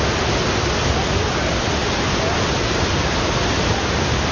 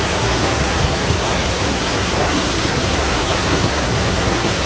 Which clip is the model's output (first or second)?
second